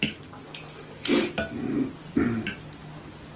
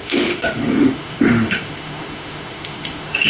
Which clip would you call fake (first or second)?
second